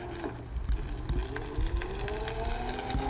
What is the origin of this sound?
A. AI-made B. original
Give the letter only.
B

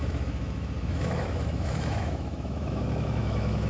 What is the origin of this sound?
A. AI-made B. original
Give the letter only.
A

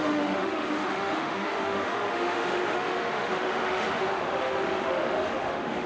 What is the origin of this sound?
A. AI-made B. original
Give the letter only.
A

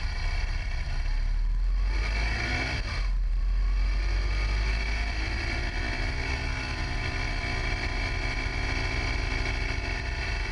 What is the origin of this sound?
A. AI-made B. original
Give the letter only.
B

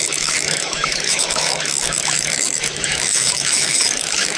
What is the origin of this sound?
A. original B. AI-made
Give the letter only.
B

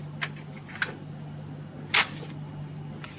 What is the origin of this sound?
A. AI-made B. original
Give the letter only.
B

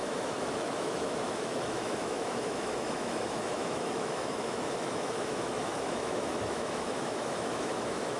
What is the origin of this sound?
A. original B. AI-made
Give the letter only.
B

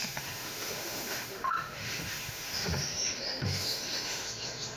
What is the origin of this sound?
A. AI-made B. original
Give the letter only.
A